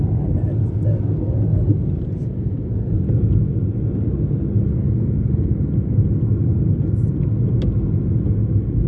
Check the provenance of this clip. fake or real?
real